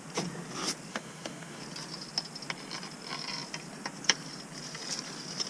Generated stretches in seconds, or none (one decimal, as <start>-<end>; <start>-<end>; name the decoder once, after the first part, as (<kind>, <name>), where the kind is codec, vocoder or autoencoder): 0.9-1.6 (autoencoder, DAC-VAE)